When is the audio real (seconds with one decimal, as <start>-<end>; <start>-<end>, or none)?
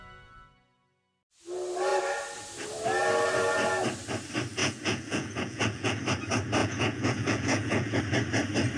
0.0-4.6; 6.0-6.6; 8.0-8.8